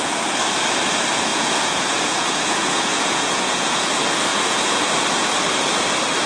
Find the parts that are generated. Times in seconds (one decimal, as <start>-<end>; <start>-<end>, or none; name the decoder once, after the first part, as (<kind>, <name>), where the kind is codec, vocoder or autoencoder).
1.3-3.9 (vocoder, Vocos); 4.3-4.9